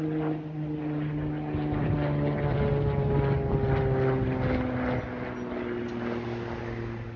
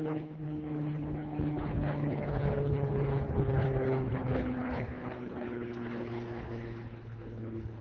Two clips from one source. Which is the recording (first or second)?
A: first